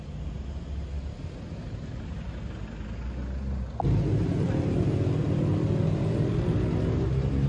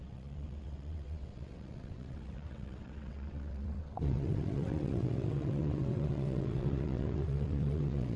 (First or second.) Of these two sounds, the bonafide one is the first